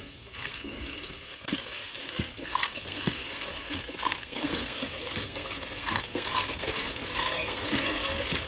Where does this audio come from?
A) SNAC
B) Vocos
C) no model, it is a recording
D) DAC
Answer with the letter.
A